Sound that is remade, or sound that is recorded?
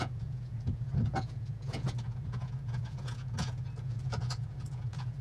remade